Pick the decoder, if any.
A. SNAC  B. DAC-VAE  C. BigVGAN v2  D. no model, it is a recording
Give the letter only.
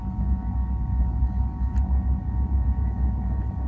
D